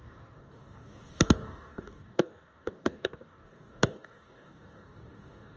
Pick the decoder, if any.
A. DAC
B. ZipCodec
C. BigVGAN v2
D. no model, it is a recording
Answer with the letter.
A